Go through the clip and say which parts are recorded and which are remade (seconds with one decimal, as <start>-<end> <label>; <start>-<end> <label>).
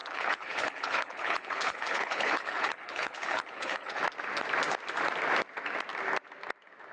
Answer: 0.0-4.0 remade; 4.0-6.9 recorded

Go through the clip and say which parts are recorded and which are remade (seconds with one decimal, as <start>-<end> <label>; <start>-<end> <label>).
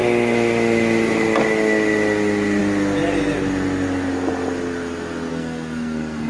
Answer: 0.0-5.3 recorded; 5.3-6.3 remade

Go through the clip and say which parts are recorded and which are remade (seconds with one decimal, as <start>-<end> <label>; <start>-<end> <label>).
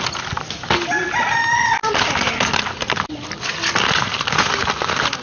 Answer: 0.0-5.2 recorded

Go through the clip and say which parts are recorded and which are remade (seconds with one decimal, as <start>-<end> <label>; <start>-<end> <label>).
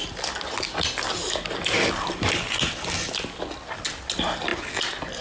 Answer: 0.0-5.2 recorded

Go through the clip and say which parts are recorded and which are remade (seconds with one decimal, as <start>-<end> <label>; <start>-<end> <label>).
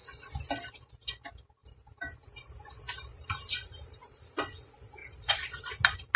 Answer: 0.0-1.6 recorded; 1.6-4.2 remade; 4.2-5.0 recorded; 5.0-5.7 remade; 5.7-6.2 recorded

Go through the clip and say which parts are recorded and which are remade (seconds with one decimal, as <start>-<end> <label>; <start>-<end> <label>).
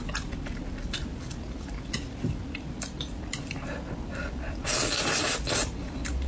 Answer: 0.0-6.3 recorded